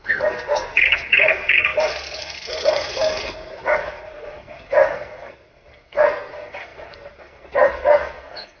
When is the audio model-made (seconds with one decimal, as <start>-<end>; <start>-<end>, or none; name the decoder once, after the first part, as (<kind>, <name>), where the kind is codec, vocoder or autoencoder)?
0.0-8.6 (codec, SNAC)